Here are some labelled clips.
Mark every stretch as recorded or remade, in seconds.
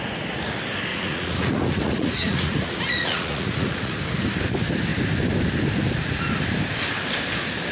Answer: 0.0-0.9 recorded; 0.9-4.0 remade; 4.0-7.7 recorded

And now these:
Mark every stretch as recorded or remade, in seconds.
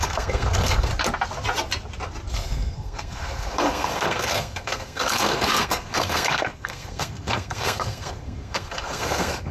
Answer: 0.0-0.9 remade; 0.9-2.3 recorded; 2.3-9.5 remade